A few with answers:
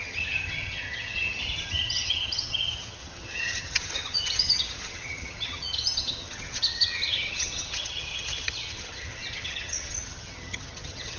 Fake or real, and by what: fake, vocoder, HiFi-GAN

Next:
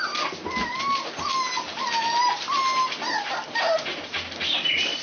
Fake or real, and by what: real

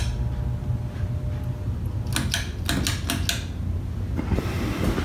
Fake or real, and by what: real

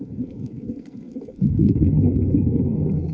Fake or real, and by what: fake, codec, SNAC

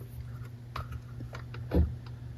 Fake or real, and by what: real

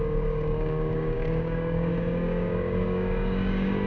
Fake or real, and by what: fake, codec, DAC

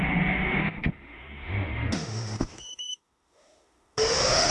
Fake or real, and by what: fake, autoencoder, DAC-VAE